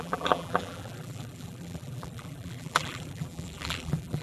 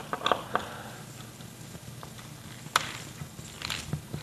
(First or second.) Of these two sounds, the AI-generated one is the first